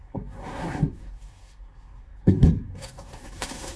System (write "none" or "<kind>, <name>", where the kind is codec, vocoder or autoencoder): codec, SNAC